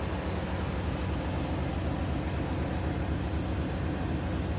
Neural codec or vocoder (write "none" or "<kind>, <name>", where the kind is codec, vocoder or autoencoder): none